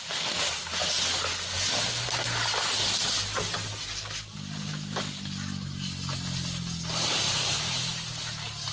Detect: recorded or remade recorded